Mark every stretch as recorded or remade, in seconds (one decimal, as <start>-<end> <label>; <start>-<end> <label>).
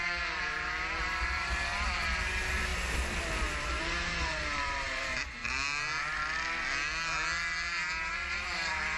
0.0-2.7 remade; 2.7-3.2 recorded; 3.2-5.4 remade; 5.4-8.1 recorded; 8.1-9.0 remade